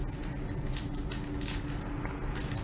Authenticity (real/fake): real